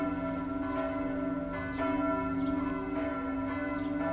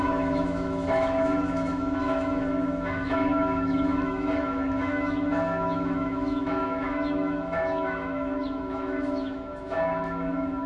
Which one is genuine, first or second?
first